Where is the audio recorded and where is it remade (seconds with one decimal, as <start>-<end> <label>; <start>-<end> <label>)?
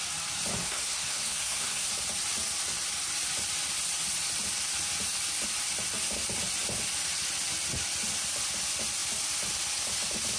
0.0-0.6 recorded; 0.6-1.9 remade; 1.9-10.4 recorded